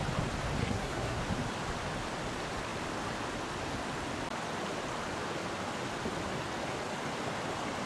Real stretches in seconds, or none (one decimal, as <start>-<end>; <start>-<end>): 0.0-0.6; 1.2-7.9